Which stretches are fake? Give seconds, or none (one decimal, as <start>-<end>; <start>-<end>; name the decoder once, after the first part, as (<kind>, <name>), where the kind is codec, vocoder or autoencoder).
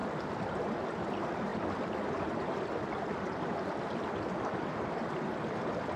none